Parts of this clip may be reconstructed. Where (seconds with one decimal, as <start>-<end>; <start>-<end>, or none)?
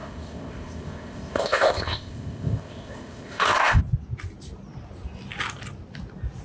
0.0-3.8